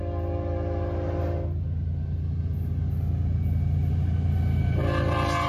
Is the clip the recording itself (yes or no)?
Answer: yes